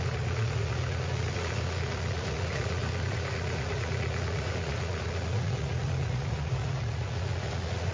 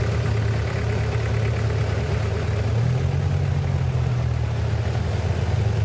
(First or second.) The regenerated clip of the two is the first